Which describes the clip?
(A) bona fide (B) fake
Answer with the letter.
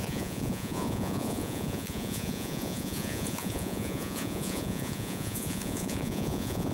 B